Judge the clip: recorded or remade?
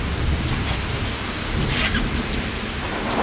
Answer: recorded